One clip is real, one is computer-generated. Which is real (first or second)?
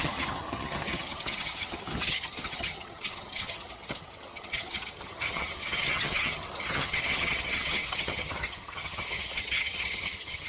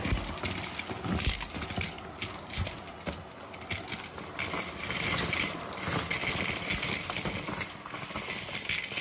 second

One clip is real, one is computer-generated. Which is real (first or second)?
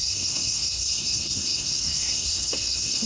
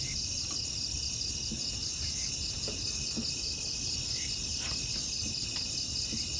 second